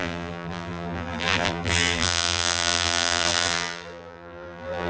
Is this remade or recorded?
remade